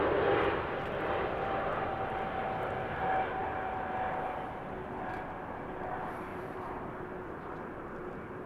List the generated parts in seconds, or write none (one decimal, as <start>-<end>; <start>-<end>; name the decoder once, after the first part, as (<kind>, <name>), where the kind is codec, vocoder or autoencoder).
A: 6.3-6.9 (vocoder, BigVGAN v2)